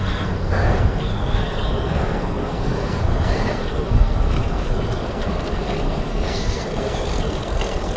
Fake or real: fake